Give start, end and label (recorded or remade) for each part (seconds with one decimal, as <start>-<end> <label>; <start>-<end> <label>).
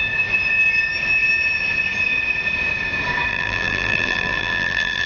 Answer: 0.0-3.3 recorded; 3.3-5.1 remade